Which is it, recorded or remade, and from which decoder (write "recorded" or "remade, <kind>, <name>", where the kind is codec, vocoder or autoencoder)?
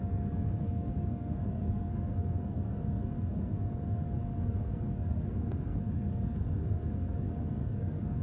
remade, codec, SNAC